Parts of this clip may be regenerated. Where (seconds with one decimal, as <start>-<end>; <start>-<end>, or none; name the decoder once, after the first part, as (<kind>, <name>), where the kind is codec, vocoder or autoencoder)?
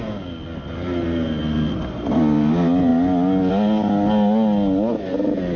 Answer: none